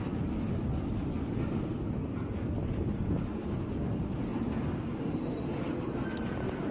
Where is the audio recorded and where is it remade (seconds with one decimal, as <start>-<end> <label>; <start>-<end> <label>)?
0.0-3.4 recorded; 3.4-3.9 remade; 3.9-6.7 recorded